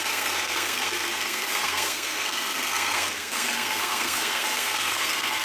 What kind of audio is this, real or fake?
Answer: fake